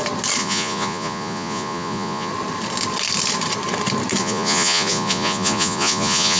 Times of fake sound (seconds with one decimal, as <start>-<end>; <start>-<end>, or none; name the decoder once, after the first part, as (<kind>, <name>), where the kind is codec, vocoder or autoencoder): 0.4-2.3 (vocoder, Vocos); 4.2-6.4